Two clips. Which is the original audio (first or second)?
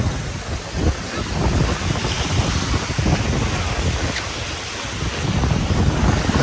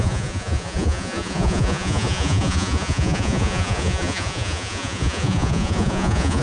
first